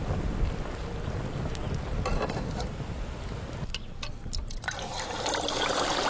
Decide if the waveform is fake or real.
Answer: real